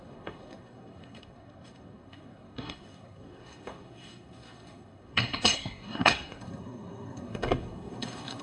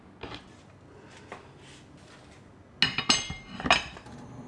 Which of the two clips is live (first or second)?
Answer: second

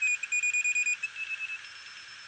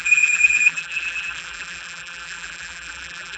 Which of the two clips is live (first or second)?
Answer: first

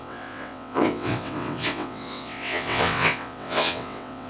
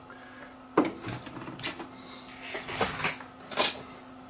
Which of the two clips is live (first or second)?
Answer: second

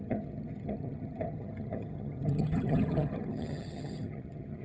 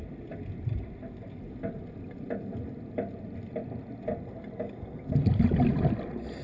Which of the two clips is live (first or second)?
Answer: second